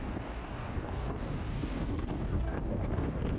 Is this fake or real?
fake